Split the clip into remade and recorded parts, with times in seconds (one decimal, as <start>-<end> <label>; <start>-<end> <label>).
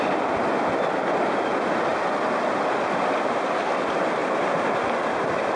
0.0-5.6 recorded